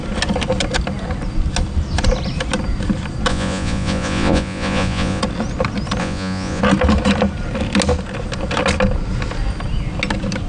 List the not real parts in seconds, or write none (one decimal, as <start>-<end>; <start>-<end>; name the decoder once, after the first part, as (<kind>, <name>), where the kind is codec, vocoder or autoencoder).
3.3-5.2 (vocoder, Vocos); 6.0-6.6